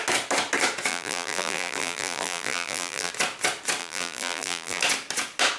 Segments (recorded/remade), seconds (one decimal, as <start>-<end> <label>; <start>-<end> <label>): 0.0-0.9 recorded; 0.9-3.1 remade; 3.1-3.8 recorded; 3.8-4.8 remade; 4.8-5.6 recorded